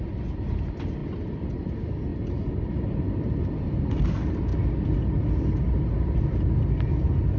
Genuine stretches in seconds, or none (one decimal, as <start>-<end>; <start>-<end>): 0.0-7.4

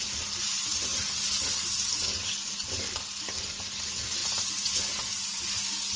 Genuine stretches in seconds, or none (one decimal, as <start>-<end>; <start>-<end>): 0.0-6.0

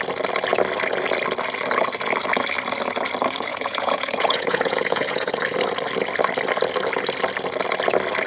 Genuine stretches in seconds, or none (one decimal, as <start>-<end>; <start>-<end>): 0.0-3.5; 5.3-8.3

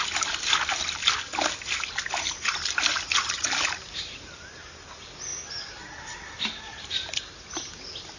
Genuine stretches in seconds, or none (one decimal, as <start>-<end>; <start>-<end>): 0.0-8.2

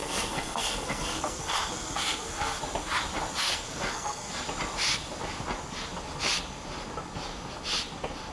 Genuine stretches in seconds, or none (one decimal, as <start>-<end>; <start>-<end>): 2.6-3.4; 4.3-8.3